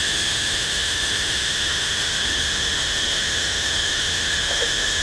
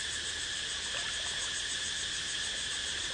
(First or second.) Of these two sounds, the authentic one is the second